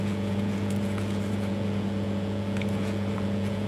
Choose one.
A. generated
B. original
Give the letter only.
A